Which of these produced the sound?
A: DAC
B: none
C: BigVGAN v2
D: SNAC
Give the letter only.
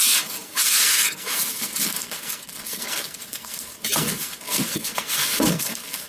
D